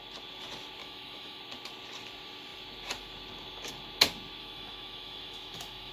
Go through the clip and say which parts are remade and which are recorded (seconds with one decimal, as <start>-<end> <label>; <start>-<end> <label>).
0.0-0.8 recorded; 0.8-1.4 remade; 1.4-4.4 recorded; 4.4-5.9 remade